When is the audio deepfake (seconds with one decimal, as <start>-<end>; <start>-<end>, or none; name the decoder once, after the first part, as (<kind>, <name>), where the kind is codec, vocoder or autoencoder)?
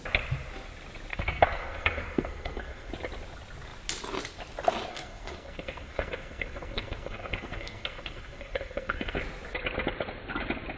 1.1-2.9 (codec, SNAC); 4.9-9.2